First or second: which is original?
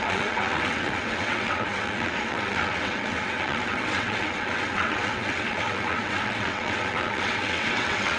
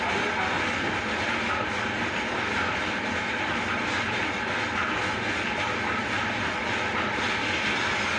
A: second